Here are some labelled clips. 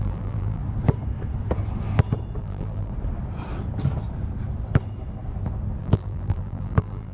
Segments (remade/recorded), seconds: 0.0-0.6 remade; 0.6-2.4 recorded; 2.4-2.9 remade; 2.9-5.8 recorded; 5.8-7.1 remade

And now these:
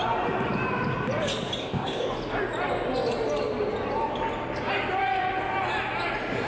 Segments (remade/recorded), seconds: 0.0-1.6 recorded; 1.6-2.1 remade; 2.1-6.5 recorded

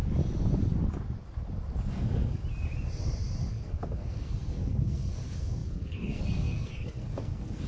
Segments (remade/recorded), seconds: 0.0-1.9 recorded; 1.9-2.4 remade; 2.4-3.5 recorded; 3.5-7.7 remade

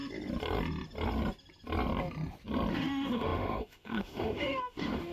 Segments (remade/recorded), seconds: 0.0-2.7 recorded; 2.7-5.1 remade

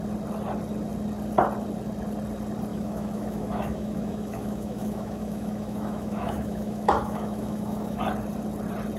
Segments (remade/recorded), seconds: 0.0-2.7 recorded; 2.7-8.0 remade; 8.0-9.0 recorded

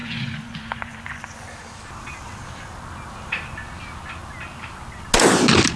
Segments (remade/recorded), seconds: 0.0-1.5 remade; 1.5-5.8 recorded

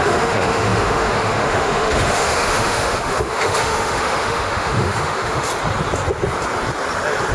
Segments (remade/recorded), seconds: 0.0-5.5 remade; 5.5-7.3 recorded